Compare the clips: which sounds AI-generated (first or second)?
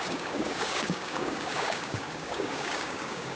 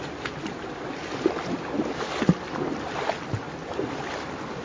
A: first